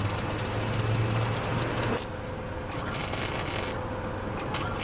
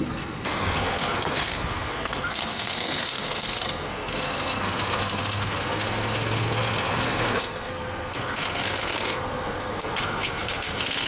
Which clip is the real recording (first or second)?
first